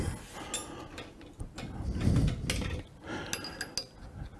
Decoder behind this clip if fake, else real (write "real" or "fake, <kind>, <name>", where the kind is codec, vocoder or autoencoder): real